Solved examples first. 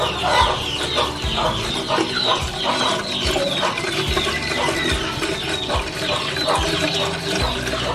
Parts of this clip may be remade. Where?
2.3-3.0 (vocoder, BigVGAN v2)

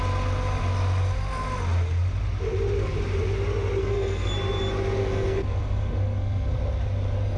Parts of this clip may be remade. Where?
3.8-4.3 (codec, SNAC); 5.0-6.6

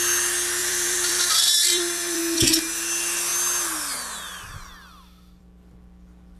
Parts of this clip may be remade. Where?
0.6-2.2 (vocoder, BigVGAN v2)

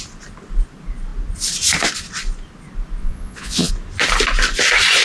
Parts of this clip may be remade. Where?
3.0-3.7 (vocoder, Vocos)

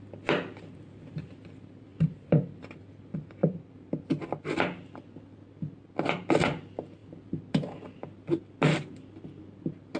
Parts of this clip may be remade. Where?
1.9-2.8 (vocoder, BigVGAN v2)

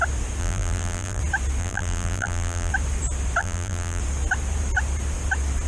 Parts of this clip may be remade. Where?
0.4-1.2 (vocoder, BigVGAN v2); 1.6-2.7; 3.4-4.0